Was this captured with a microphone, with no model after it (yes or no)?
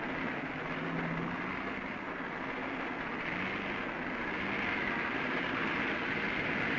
yes